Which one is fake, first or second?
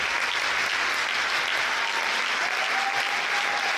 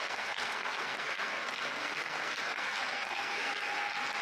second